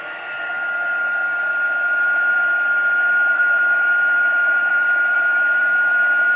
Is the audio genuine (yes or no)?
no